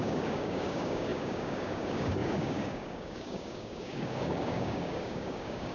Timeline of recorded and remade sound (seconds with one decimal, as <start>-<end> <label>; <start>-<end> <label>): 0.0-5.7 remade